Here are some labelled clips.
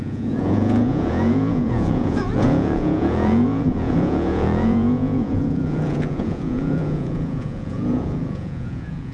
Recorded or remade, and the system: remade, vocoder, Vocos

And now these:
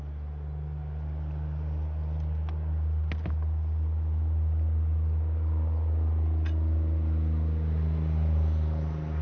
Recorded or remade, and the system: recorded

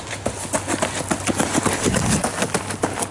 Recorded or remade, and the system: recorded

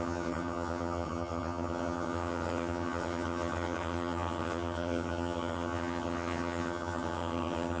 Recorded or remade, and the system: remade, vocoder, HiFi-GAN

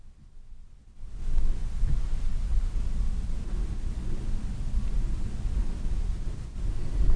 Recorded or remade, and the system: recorded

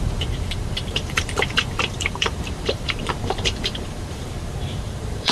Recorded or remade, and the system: remade, vocoder, BigVGAN v2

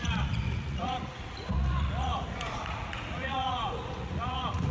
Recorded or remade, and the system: remade, vocoder, Vocos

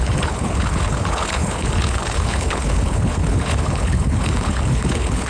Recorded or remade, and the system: remade, codec, HILCodec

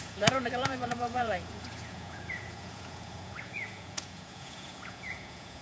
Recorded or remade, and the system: remade, vocoder, Vocos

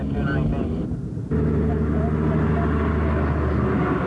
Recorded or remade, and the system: recorded